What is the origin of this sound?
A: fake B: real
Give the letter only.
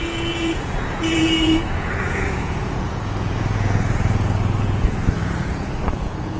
A